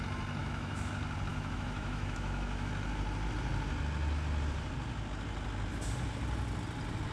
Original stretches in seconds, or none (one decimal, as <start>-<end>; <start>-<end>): 0.0-0.4; 0.9-1.3; 2.7-7.1